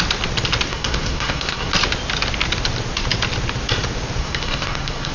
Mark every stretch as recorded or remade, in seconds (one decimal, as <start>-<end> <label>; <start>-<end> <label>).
0.0-0.7 recorded; 0.7-1.7 remade; 1.7-4.2 recorded; 4.2-5.1 remade

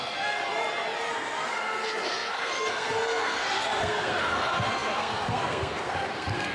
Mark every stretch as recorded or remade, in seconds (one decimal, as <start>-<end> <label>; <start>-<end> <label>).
0.0-0.4 remade; 0.4-1.1 recorded; 1.1-6.5 remade

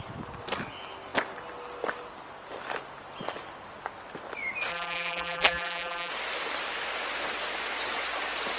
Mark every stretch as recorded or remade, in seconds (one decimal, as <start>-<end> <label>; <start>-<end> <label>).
0.0-4.7 recorded; 4.7-6.1 remade; 6.1-8.6 recorded

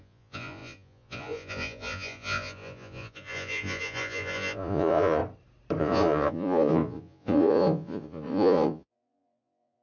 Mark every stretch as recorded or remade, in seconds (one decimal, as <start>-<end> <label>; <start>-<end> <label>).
0.0-5.2 remade; 5.2-5.8 recorded; 5.8-9.8 remade

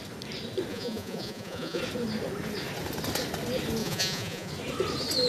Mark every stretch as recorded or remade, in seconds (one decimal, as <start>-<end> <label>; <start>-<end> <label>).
0.0-0.7 recorded; 0.7-1.8 remade; 1.8-3.8 recorded; 3.8-4.5 remade; 4.5-5.3 recorded

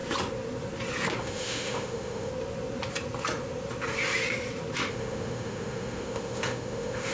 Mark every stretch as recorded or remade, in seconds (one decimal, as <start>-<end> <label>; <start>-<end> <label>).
0.0-1.2 recorded; 1.2-2.3 remade; 2.3-4.9 recorded; 4.9-7.1 remade

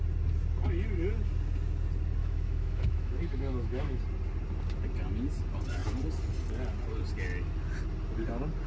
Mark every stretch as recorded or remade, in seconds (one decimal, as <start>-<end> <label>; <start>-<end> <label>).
0.0-2.2 recorded; 2.2-4.0 remade; 4.0-8.7 recorded